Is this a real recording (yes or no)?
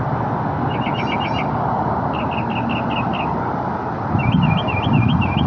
yes